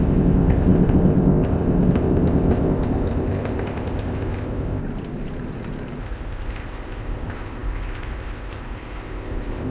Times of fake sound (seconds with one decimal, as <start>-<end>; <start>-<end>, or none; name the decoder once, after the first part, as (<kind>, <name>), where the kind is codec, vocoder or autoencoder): 0.0-4.8 (codec, ZipCodec); 6.0-9.7